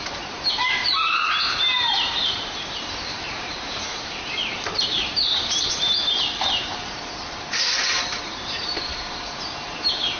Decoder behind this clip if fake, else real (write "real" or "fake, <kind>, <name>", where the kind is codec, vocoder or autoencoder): fake, vocoder, BigVGAN v2